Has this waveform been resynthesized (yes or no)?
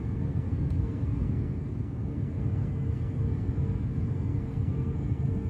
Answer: yes